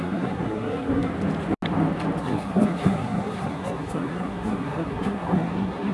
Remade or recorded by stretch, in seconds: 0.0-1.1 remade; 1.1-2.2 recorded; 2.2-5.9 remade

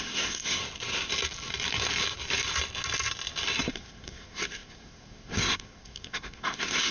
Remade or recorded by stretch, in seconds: 0.0-0.6 remade; 0.6-3.7 recorded; 3.7-6.9 remade